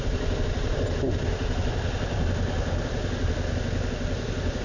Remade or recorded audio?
recorded